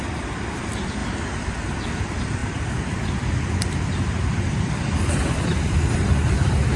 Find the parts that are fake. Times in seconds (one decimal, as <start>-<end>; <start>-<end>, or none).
0.0-1.0; 2.0-6.8